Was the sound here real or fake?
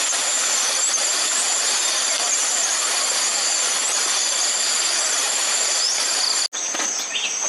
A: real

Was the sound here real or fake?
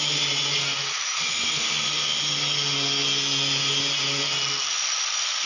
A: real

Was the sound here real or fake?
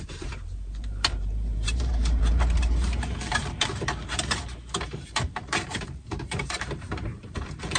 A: fake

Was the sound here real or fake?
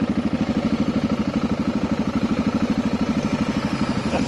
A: real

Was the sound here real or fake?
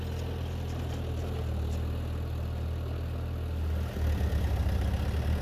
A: real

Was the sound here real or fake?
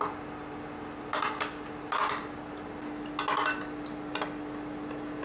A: real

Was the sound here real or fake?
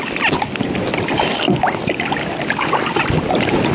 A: real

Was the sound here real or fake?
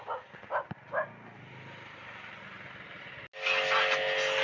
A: real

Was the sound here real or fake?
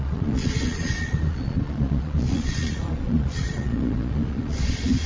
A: fake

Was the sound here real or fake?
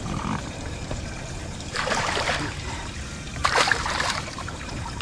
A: fake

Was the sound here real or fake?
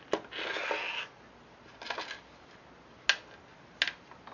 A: real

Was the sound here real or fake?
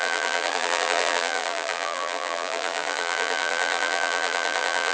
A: fake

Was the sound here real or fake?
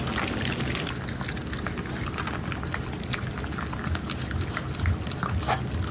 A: real